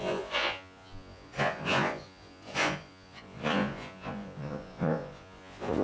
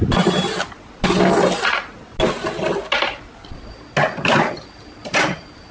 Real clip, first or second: second